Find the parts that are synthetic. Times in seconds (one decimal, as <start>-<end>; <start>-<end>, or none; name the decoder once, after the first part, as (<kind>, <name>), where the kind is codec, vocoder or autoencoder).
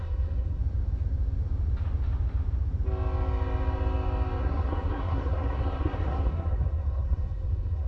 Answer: 0.0-0.6 (codec, SNAC); 4.4-7.9